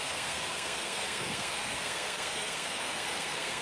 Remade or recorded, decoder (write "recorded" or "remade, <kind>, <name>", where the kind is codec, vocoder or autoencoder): remade, codec, SNAC